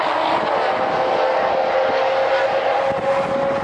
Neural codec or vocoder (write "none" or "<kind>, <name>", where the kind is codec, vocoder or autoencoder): none